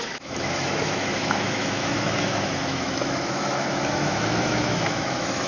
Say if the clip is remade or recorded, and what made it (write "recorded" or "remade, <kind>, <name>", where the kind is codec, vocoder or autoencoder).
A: remade, autoencoder, DAC-VAE